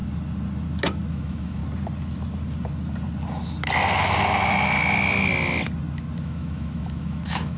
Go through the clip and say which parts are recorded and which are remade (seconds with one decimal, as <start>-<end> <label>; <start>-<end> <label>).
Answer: 0.0-1.1 recorded; 1.1-1.6 remade; 1.6-6.2 recorded; 6.2-7.6 remade